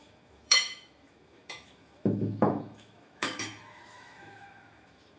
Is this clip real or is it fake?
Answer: fake